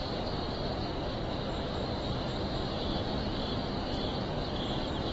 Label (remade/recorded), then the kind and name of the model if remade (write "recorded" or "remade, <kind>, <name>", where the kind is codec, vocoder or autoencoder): recorded